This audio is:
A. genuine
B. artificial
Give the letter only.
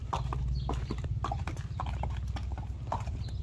A